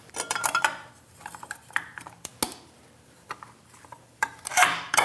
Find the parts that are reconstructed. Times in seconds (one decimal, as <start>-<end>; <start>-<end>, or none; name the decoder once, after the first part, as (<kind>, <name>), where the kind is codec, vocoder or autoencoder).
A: 0.0-2.3 (vocoder, BigVGAN v2); 3.6-5.0